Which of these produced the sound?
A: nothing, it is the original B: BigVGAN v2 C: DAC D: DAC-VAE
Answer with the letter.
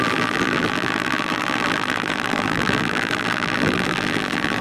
B